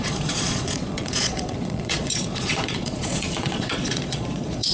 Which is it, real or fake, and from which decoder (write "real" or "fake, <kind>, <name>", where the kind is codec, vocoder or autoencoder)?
fake, vocoder, Vocos